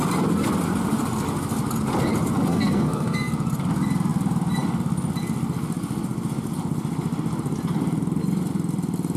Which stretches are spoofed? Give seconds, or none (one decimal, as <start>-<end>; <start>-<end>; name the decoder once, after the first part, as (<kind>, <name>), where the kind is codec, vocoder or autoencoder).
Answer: 2.5-3.3 (codec, SNAC)